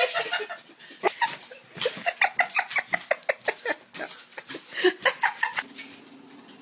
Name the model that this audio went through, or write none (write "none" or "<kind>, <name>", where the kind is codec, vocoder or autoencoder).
none